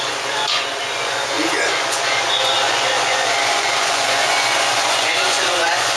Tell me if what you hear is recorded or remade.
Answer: remade